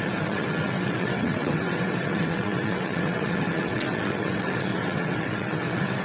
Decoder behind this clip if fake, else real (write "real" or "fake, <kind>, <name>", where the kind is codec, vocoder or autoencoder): fake, vocoder, WaveNeXt